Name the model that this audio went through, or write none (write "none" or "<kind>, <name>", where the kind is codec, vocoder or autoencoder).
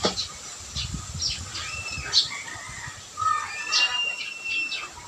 none